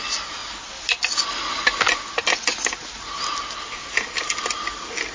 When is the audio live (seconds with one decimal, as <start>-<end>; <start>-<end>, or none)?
0.0-5.1